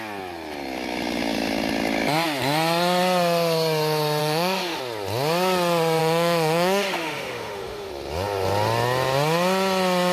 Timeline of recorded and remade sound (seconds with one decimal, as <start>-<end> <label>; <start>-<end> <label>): 0.0-4.2 recorded; 4.2-4.8 remade; 4.8-6.0 recorded; 6.0-7.9 remade; 7.9-10.1 recorded